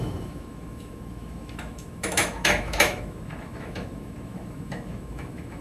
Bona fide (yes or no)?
no